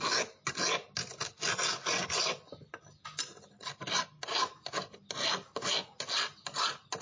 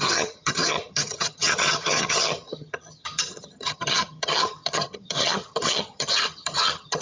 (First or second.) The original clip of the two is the first